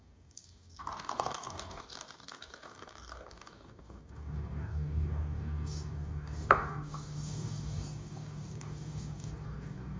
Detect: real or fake fake